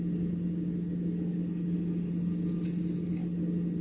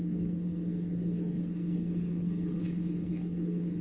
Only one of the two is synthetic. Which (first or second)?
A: second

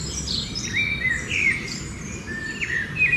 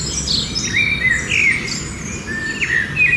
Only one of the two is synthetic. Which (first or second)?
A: first